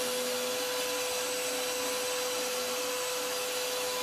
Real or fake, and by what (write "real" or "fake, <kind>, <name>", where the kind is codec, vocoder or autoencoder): real